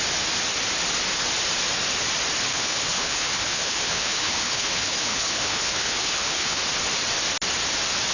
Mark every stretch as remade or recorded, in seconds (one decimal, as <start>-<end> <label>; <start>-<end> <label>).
0.0-2.5 recorded; 2.5-6.6 remade; 6.6-8.1 recorded